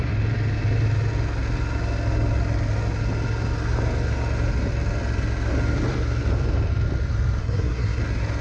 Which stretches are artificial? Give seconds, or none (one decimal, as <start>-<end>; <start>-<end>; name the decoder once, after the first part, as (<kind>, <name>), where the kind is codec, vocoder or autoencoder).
7.4-8.0 (codec, SNAC)